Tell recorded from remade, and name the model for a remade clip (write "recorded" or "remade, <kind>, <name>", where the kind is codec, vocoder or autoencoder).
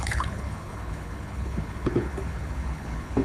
remade, codec, HILCodec